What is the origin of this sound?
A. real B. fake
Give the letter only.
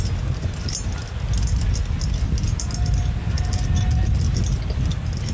A